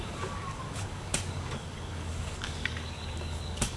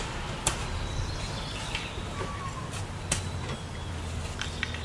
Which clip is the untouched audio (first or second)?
second